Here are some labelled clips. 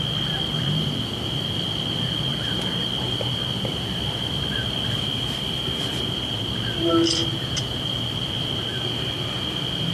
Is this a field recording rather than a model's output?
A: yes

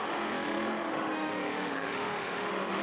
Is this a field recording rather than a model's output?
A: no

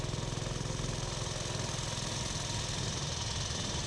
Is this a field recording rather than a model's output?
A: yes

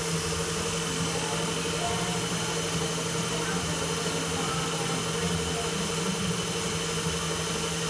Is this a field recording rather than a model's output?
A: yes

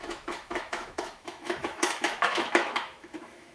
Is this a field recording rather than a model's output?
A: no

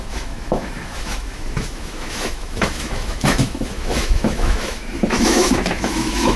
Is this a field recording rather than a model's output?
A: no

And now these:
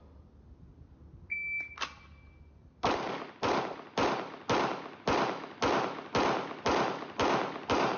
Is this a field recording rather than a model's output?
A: yes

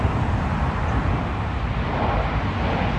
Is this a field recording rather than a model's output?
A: yes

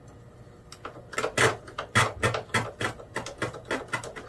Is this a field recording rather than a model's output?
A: yes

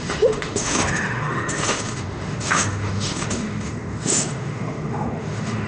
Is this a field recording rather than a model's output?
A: no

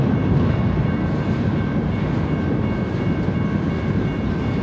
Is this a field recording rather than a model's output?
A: yes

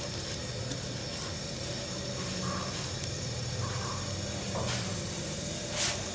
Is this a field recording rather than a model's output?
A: yes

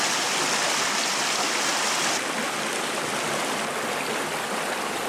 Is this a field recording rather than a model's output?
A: yes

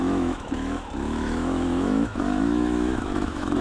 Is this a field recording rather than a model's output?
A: no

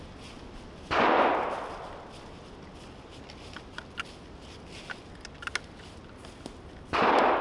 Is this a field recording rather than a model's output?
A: yes